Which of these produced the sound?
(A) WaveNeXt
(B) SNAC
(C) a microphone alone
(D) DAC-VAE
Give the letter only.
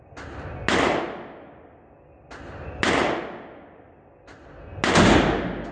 C